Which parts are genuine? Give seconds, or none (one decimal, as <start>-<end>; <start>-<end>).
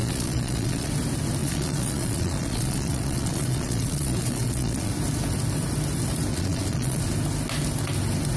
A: 0.9-1.4; 4.9-6.3; 7.0-8.4